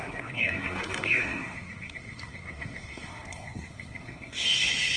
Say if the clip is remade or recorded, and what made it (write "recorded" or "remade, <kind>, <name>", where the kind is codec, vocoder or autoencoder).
remade, codec, SNAC